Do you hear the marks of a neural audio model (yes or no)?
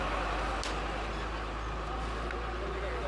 no